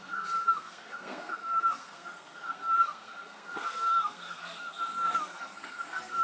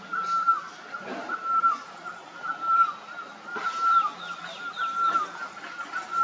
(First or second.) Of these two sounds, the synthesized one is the first